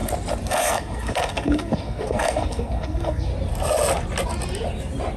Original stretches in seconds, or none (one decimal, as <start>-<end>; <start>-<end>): 0.0-0.5; 3.3-5.2